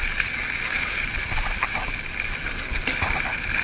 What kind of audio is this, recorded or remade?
recorded